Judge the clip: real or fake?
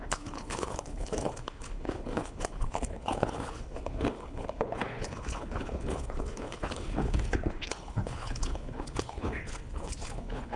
fake